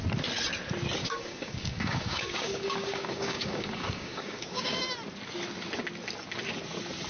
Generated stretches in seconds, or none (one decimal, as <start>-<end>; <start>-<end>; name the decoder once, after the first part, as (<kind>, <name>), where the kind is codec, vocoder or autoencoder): 1.0-4.8 (codec, DAC)

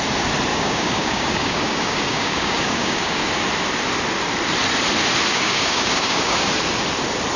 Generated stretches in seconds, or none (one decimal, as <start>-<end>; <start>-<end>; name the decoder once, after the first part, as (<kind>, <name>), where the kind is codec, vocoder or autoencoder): 0.5-3.3 (codec, DAC); 5.3-6.5

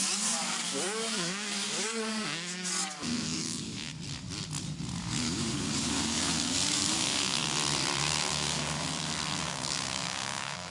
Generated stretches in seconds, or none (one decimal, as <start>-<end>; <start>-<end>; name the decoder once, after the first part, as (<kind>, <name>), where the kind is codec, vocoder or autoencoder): 0.0-3.9 (codec, DAC); 5.0-7.4; 8.0-10.7

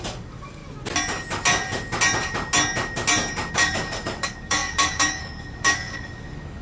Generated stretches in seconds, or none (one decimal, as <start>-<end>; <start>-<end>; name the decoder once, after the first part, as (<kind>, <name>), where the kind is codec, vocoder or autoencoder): 0.0-0.6 (codec, DAC); 3.5-6.6

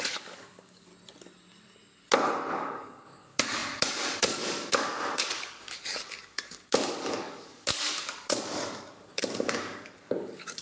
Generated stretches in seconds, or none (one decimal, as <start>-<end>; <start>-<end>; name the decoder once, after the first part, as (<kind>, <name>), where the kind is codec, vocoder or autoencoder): 0.0-0.9 (codec, DAC); 2.5-10.6

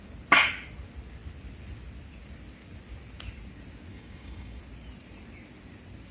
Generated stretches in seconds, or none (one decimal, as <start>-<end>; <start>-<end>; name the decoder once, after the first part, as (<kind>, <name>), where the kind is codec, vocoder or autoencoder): 3.9-4.6 (codec, DAC)

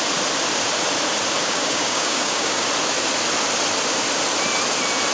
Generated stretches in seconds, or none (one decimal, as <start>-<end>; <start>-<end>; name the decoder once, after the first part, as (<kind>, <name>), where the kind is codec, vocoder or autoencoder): 1.4-2.7 (codec, DAC)

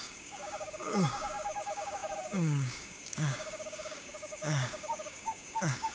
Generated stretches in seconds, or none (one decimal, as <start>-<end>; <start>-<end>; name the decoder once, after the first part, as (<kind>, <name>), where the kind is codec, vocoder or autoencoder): 0.0-5.9 (codec, DAC)